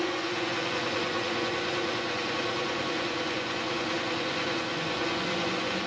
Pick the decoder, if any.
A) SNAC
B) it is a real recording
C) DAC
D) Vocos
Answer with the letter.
D